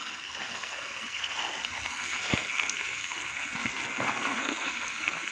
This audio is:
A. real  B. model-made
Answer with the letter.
B